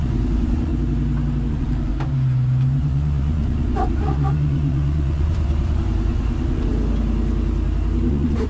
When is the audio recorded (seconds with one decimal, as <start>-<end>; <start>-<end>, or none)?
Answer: 0.7-1.5; 1.9-2.8; 6.7-8.1